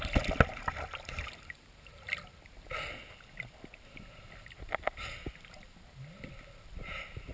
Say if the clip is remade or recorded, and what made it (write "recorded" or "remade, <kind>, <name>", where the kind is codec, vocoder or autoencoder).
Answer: recorded